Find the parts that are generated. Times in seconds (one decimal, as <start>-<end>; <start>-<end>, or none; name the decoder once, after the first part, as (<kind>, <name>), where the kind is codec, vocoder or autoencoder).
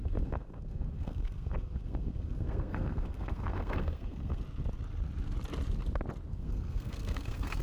0.0-4.4 (codec, SNAC); 6.3-7.6